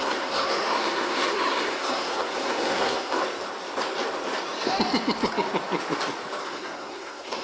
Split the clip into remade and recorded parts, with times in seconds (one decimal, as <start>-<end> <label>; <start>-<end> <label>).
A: 0.0-3.2 remade; 3.2-6.4 recorded; 6.4-7.4 remade